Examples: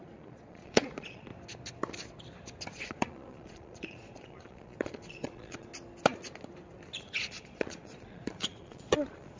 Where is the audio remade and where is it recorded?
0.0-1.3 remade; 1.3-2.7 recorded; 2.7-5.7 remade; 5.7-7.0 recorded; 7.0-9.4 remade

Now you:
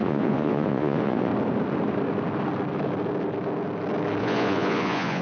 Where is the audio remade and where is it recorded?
0.0-1.3 remade; 1.3-4.2 recorded; 4.2-5.2 remade